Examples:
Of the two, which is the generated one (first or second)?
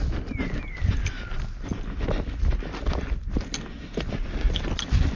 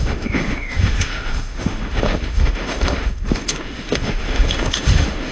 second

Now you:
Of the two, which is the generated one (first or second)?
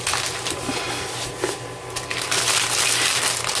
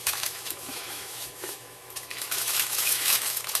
second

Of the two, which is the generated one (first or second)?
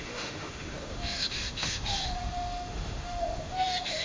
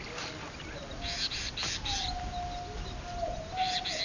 first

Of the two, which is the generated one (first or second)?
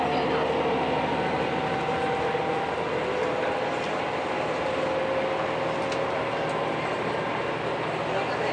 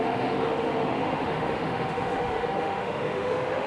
second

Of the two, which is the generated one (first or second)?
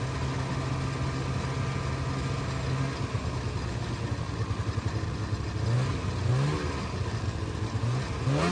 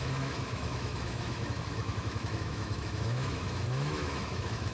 second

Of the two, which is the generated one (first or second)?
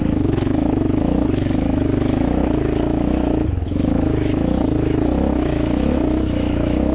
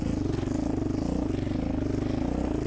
first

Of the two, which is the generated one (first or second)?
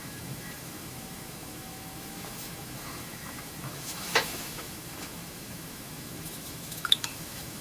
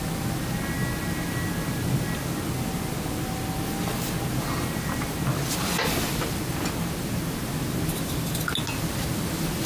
first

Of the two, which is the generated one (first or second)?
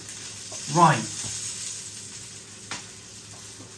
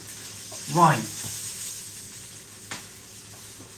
second